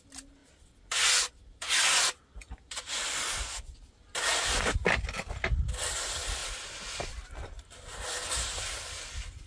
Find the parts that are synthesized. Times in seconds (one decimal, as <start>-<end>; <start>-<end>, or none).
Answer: none